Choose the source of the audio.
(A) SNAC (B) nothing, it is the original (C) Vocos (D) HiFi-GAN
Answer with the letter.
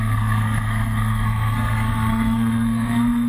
A